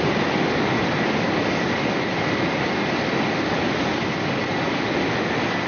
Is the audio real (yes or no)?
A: yes